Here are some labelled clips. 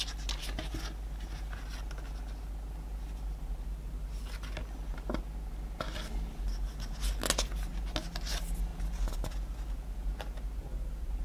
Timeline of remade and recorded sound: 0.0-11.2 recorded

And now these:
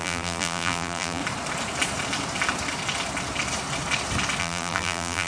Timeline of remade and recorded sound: 0.0-1.2 remade; 1.2-4.4 recorded; 4.4-5.3 remade

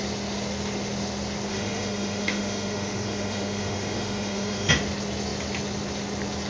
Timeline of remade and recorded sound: 0.0-1.5 recorded; 1.5-4.7 remade; 4.7-6.5 recorded

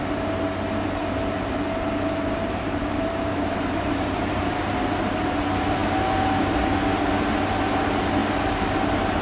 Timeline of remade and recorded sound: 0.0-1.0 recorded; 1.0-4.4 remade; 4.4-9.2 recorded

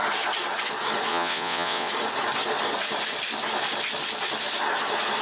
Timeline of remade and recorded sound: 0.0-1.1 recorded; 1.1-1.9 remade; 1.9-5.2 recorded

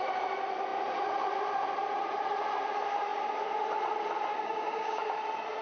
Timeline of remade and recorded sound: 0.0-4.3 recorded; 4.3-5.0 remade; 5.0-5.6 recorded